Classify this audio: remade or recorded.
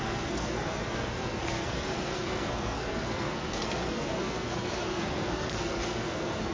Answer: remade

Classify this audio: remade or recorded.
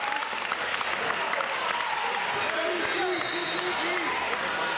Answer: recorded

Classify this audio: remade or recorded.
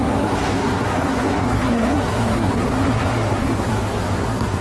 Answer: remade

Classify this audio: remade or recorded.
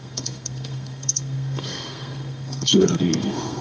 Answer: remade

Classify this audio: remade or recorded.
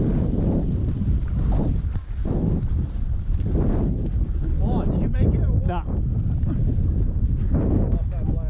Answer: recorded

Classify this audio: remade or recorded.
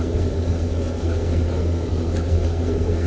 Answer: remade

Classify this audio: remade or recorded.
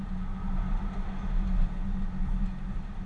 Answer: recorded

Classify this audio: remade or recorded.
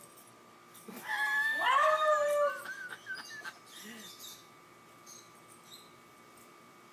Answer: recorded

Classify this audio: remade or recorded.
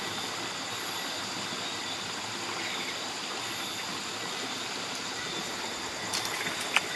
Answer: recorded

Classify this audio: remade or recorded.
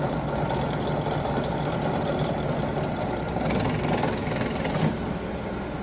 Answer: recorded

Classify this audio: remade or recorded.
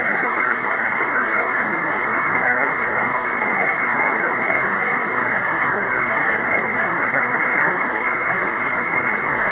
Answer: remade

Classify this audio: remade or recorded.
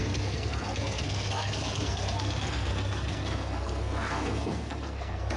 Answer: remade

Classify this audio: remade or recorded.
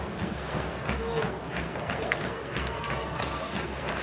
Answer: remade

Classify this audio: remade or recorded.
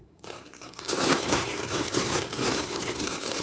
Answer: remade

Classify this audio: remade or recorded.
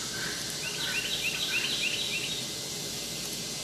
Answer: recorded